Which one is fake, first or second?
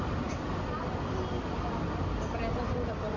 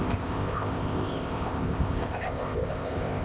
second